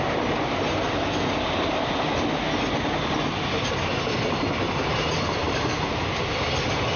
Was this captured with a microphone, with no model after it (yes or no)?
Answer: yes